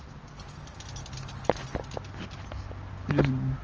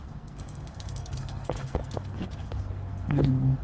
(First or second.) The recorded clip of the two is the first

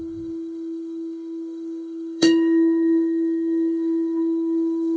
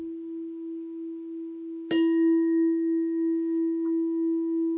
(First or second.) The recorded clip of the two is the second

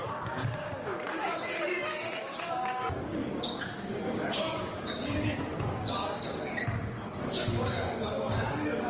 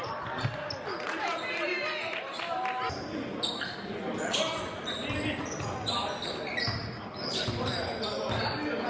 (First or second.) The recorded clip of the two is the second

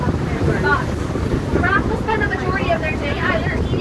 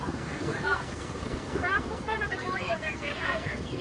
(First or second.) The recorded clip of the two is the first